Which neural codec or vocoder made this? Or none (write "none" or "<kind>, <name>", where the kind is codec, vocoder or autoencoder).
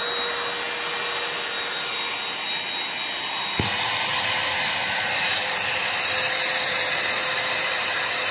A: none